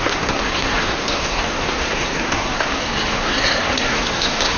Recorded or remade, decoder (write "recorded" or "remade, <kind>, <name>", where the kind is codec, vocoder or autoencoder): remade, codec, SNAC